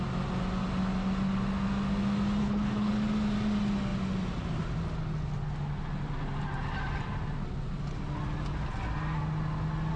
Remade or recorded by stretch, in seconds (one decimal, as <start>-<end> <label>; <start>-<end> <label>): 0.0-2.4 recorded; 2.4-2.9 remade; 2.9-10.0 recorded